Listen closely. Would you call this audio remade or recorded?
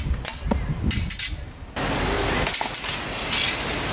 recorded